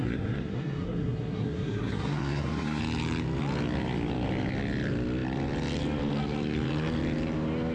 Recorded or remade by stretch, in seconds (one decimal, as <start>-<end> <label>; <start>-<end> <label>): 0.0-2.8 remade; 2.8-7.7 recorded